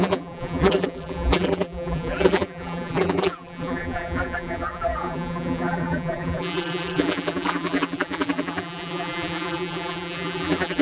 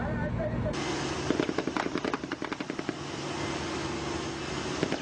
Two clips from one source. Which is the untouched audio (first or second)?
second